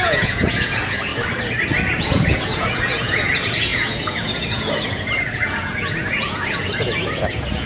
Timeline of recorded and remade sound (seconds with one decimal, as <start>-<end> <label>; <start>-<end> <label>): 0.0-1.1 remade; 1.1-2.0 recorded; 2.0-7.7 remade